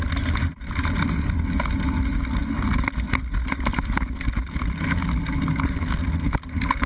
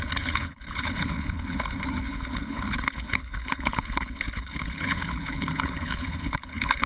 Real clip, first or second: first